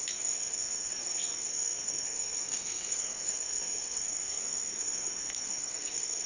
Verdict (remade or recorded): remade